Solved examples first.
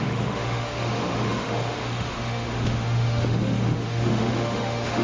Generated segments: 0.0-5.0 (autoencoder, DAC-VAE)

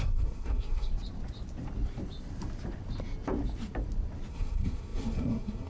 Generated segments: 0.0-0.9 (codec, SNAC); 4.3-5.7